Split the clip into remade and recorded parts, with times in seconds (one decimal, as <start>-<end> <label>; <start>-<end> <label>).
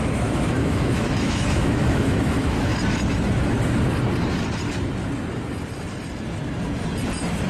0.0-2.7 remade; 2.7-7.5 recorded